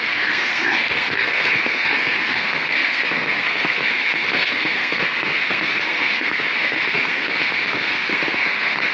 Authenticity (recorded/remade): remade